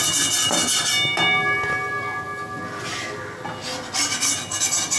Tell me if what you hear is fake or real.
real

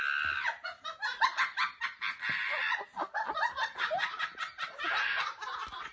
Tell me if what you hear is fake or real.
real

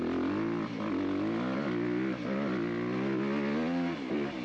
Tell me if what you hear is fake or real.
real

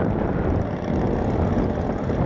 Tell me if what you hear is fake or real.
real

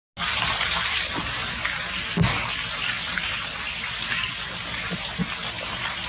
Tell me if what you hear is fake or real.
real